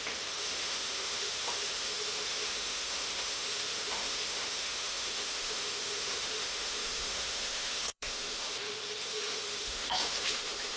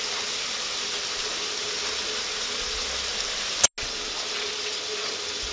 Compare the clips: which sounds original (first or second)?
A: second